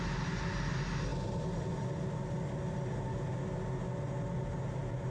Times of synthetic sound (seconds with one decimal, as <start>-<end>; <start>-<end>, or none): none